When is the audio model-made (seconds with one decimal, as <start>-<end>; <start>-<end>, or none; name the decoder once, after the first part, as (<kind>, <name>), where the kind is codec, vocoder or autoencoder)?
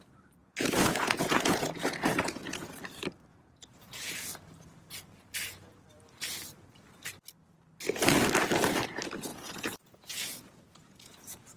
0.4-2.7 (vocoder, Vocos); 3.3-4.1; 9.3-11.6